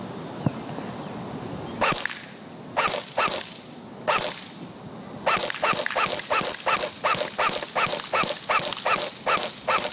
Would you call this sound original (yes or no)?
yes